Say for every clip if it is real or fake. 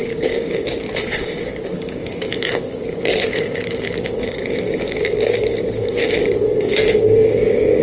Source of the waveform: fake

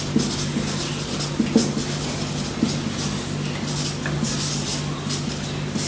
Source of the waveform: real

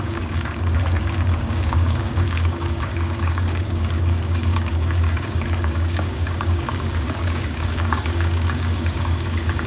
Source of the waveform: fake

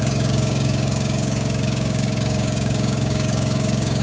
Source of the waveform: fake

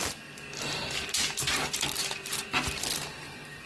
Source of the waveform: real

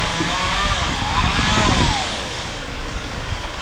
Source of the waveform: fake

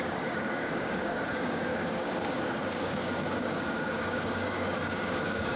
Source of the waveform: fake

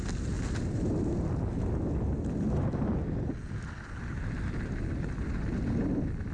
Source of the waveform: real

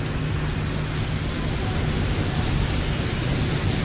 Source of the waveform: real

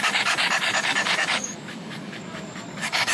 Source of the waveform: fake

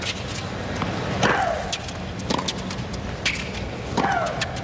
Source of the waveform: real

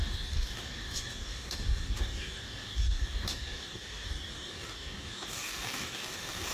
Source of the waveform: fake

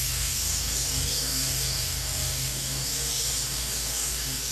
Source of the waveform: fake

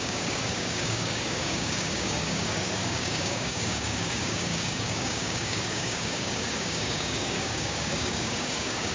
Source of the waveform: fake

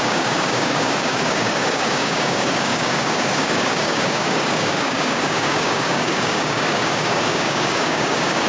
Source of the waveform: fake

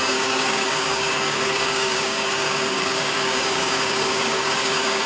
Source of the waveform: fake